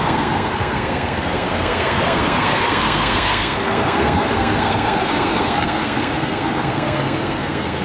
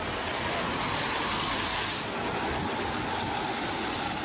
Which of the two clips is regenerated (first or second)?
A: first